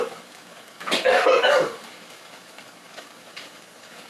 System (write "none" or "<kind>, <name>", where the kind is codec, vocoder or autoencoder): codec, DAC